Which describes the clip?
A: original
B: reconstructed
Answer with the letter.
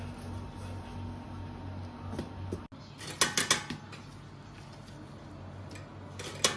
A